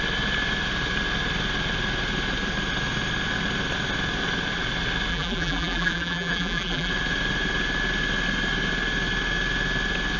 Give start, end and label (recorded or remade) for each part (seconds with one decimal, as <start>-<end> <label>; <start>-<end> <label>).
0.0-5.1 recorded; 5.1-6.9 remade; 6.9-10.2 recorded